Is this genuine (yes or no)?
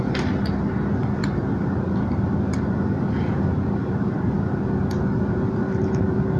yes